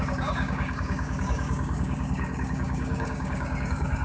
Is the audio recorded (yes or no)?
no